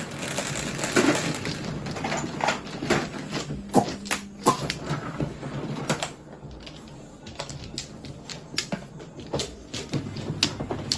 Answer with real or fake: real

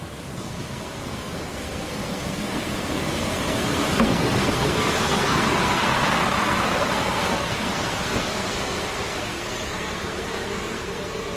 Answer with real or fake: fake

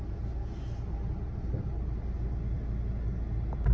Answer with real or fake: real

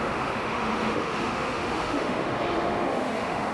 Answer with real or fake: fake